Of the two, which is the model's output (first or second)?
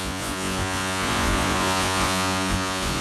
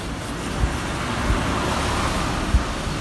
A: first